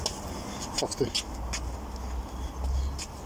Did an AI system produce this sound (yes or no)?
no